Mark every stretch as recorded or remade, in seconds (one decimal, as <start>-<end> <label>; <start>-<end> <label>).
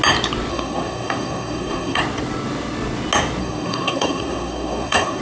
0.0-0.5 recorded; 0.5-2.0 remade; 2.0-3.4 recorded; 3.4-5.2 remade